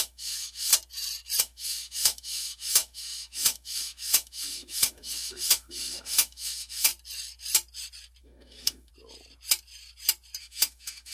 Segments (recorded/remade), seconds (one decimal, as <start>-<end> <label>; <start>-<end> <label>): 0.0-0.7 remade; 0.7-1.4 recorded; 1.4-6.9 remade; 6.9-8.2 recorded; 8.2-8.9 remade; 8.9-10.4 recorded; 10.4-11.1 remade